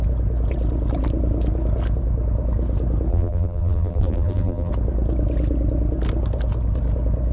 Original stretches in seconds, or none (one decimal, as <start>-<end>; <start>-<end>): 0.0-3.1; 4.7-7.3